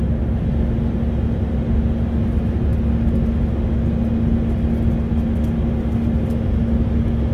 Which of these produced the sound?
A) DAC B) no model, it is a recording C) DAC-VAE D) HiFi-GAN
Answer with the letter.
B